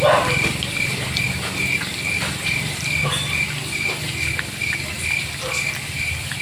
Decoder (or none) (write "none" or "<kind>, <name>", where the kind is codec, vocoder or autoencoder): none